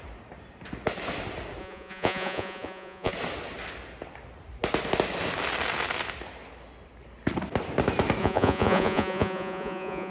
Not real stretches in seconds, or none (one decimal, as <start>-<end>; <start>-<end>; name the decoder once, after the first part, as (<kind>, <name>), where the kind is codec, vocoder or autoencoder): 1.6-3.1 (vocoder, Vocos); 8.2-10.1